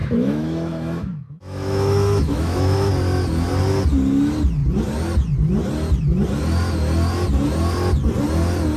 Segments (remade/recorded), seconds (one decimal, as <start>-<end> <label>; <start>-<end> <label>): 0.0-2.9 remade; 2.9-8.8 recorded